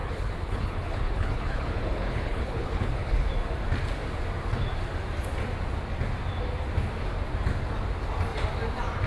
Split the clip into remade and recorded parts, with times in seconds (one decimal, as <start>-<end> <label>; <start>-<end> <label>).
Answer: 0.0-3.3 remade; 3.3-9.1 recorded